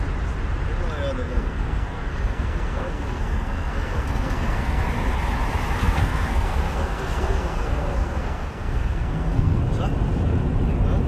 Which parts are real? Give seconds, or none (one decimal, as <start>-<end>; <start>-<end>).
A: 0.0-1.2; 4.8-5.8; 9.6-11.1